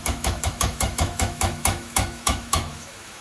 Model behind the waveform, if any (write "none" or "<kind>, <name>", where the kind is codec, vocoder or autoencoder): autoencoder, DAC-VAE